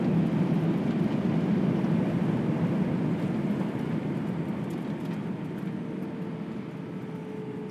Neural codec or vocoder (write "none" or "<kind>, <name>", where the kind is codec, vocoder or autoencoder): none